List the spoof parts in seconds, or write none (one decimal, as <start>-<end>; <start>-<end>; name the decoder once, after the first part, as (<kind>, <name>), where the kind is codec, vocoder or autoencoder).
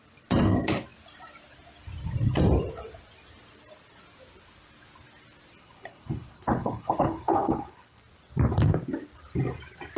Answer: 5.6-8.0 (codec, HILCodec)